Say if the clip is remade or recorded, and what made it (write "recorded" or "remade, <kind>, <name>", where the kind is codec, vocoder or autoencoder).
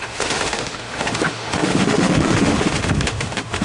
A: remade, autoencoder, DAC-VAE